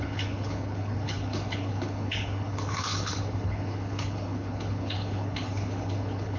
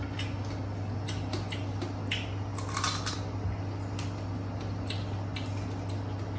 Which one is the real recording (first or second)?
second